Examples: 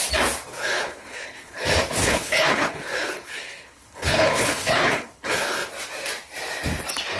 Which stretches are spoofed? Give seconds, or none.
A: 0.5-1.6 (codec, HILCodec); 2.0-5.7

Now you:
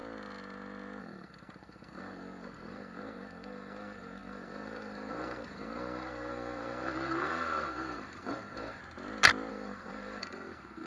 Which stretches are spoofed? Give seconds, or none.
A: 1.0-8.8 (codec, SNAC); 9.5-10.9

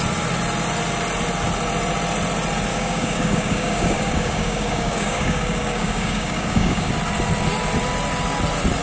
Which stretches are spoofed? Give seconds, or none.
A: 2.7-6.9 (codec, DAC)

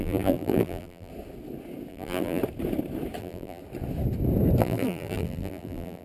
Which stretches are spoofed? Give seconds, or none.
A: 0.0-1.1 (vocoder, BigVGAN v2); 1.9-2.4; 3.2-3.6; 4.6-6.0

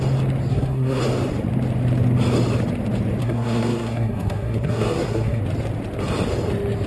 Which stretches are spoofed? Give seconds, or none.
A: 0.5-1.0 (codec, SNAC); 3.2-5.4

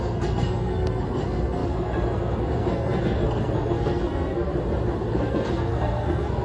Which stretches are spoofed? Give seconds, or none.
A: 0.0-4.5 (codec, SNAC); 5.1-6.4

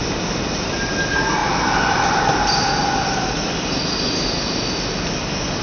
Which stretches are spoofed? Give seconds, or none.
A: none